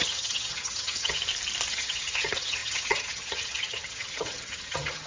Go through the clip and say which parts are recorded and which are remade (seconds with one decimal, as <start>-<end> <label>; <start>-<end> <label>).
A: 0.0-1.2 remade; 1.2-1.7 recorded; 1.7-5.1 remade